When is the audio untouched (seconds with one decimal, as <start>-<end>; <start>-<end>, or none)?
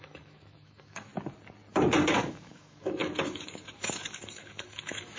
1.1-2.3